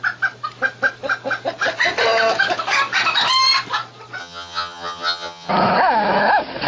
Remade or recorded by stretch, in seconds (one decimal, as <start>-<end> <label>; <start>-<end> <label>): 0.0-4.2 recorded; 4.2-5.5 remade; 5.5-6.7 recorded